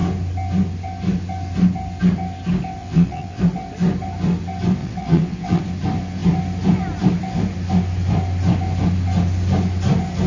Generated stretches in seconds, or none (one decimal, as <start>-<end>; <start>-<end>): 2.8-3.4; 4.8-5.6

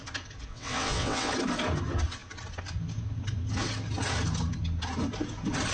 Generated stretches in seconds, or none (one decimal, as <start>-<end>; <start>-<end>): 0.5-1.3

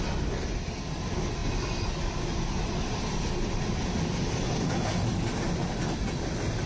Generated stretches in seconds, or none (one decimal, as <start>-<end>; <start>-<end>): none

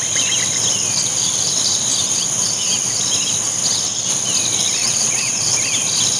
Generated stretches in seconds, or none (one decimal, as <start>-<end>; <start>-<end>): 4.8-5.4